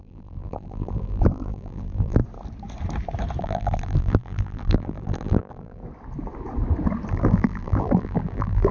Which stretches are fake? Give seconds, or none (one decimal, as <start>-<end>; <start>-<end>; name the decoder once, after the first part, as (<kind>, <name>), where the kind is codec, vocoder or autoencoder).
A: 0.0-2.2 (vocoder, BigVGAN v2); 3.4-5.8; 7.1-8.7